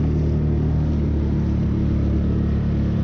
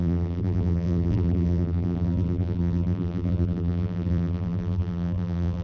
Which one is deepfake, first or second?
second